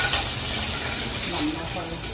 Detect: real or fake real